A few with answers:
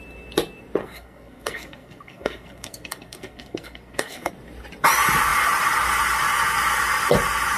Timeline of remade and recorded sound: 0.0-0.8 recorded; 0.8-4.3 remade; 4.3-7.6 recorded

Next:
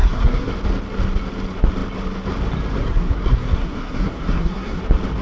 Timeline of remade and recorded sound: 0.0-0.5 remade; 0.5-2.8 recorded; 2.8-4.8 remade; 4.8-5.2 recorded

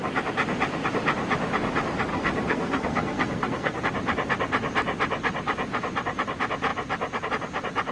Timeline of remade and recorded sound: 0.0-2.1 recorded; 2.1-3.8 remade; 3.8-7.9 recorded

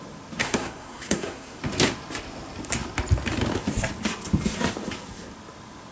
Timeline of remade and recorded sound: 0.0-0.4 recorded; 0.4-1.6 remade; 1.6-5.9 recorded

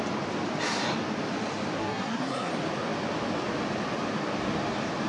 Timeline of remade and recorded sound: 0.0-1.8 recorded; 1.8-2.5 remade; 2.5-5.1 recorded

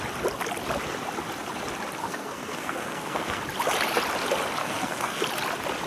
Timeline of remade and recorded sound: 0.0-2.0 recorded; 2.0-3.4 remade; 3.4-4.6 recorded; 4.6-5.2 remade; 5.2-5.9 recorded

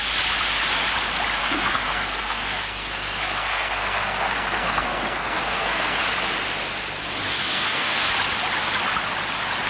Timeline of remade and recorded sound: 0.0-1.4 recorded; 1.4-6.0 remade; 6.0-7.4 recorded; 7.4-8.1 remade; 8.1-9.7 recorded

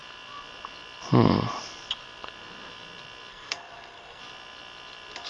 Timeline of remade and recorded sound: 0.0-3.3 recorded; 3.3-4.2 remade; 4.2-5.3 recorded